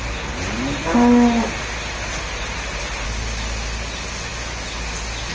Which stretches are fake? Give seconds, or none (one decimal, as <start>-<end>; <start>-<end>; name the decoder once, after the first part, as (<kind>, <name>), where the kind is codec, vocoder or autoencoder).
none